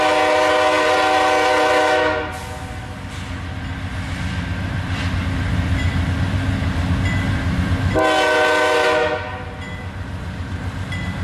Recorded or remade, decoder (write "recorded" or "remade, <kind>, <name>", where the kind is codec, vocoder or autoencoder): recorded